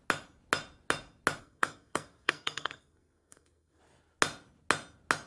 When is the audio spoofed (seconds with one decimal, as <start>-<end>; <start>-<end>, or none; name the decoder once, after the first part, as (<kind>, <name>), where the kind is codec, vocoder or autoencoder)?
1.4-3.8 (codec, SNAC)